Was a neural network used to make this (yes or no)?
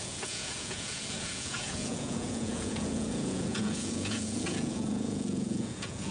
yes